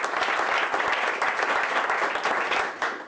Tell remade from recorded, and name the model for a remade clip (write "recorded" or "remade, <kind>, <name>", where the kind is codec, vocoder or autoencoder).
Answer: recorded